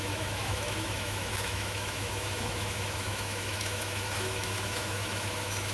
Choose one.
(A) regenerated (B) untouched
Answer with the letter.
A